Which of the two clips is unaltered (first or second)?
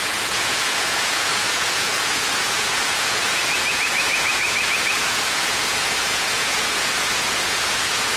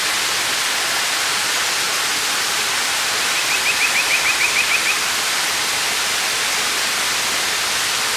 second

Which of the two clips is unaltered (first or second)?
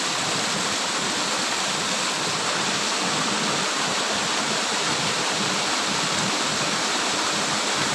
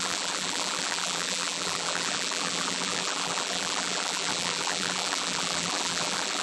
first